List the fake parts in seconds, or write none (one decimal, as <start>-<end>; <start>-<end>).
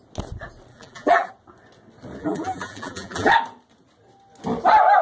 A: 0.7-1.3; 2.2-3.3